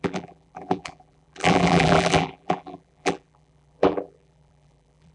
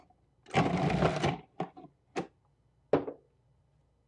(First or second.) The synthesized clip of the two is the first